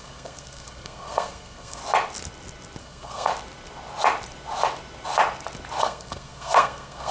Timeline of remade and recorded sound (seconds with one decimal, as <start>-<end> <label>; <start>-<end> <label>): 0.0-1.8 remade; 1.8-2.8 recorded; 2.8-3.3 remade; 3.3-5.8 recorded; 5.8-7.1 remade